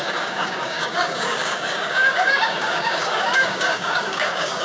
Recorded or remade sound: remade